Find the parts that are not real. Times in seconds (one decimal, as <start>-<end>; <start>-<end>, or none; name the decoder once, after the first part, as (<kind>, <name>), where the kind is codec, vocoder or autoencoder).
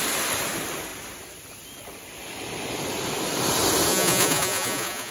3.9-5.1 (vocoder, Vocos)